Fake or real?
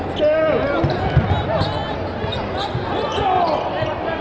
real